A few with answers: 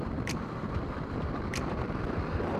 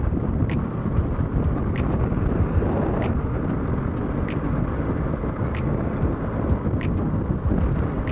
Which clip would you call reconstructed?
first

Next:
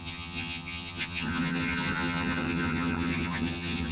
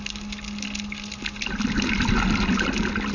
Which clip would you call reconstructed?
first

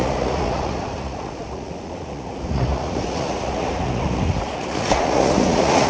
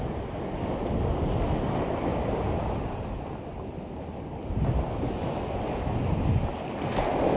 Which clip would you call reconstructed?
first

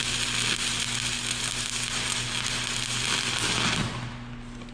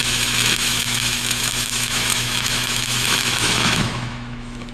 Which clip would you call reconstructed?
second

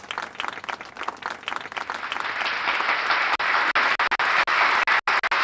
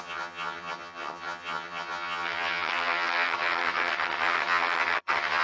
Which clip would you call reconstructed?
second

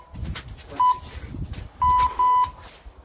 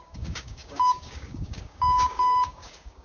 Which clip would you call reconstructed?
second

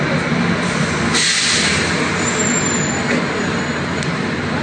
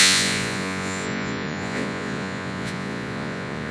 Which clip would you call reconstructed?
second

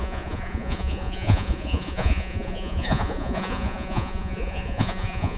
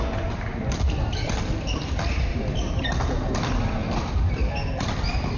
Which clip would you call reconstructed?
first